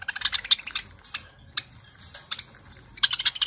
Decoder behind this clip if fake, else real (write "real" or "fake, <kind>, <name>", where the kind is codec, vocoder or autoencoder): real